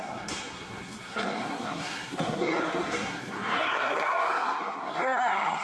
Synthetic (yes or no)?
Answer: yes